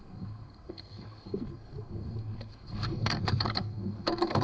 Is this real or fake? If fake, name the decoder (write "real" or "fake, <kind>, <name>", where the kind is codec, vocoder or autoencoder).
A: fake, codec, SNAC